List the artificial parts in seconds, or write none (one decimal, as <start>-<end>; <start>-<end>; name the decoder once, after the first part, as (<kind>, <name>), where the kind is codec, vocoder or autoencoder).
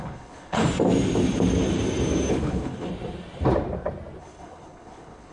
0.0-0.6 (codec, HILCodec); 2.3-2.9; 4.2-5.3